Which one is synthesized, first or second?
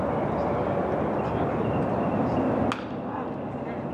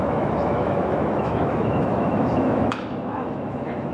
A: second